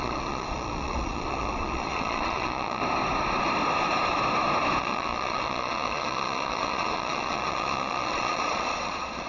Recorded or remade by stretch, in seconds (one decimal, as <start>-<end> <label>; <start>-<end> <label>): 0.0-2.8 remade; 2.8-4.8 recorded; 4.8-9.3 remade